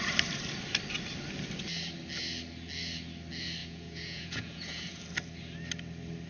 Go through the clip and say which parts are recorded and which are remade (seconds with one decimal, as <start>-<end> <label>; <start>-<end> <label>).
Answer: 0.0-3.6 recorded; 3.6-5.0 remade; 5.0-6.3 recorded